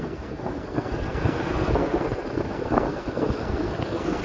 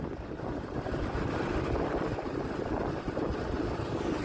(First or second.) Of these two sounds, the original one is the second